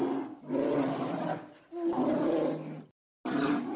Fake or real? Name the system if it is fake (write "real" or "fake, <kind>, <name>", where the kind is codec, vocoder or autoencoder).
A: real